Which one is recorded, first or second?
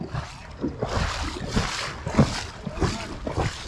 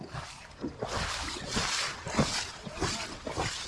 first